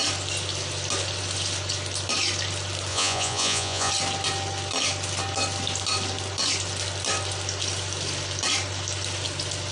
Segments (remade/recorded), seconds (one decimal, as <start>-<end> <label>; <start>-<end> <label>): 0.0-2.9 recorded; 2.9-3.9 remade; 3.9-9.7 recorded